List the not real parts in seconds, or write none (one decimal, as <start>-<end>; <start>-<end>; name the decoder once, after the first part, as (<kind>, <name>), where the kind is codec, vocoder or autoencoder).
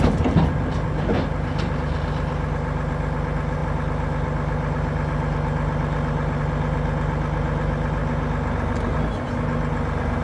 none